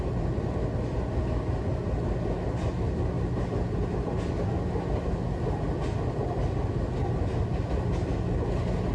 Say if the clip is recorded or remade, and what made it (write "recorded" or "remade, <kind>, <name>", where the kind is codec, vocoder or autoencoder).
recorded